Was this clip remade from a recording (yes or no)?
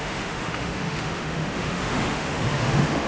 yes